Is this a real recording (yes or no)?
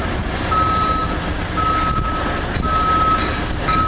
yes